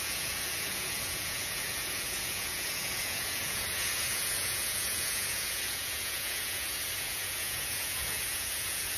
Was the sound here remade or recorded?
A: remade